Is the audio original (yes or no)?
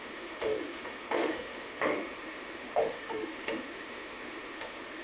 no